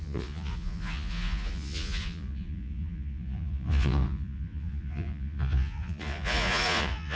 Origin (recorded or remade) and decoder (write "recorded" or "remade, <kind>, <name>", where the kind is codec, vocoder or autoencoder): remade, vocoder, Vocos